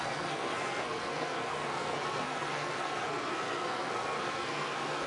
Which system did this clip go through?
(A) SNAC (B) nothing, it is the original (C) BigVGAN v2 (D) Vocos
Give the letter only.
A